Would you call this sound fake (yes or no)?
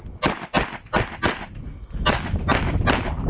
no